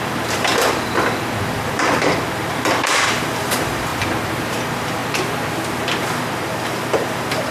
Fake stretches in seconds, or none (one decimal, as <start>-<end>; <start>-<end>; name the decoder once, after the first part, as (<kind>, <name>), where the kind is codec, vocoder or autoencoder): 0.0-3.9 (vocoder, BigVGAN v2); 4.5-5.0; 5.8-7.5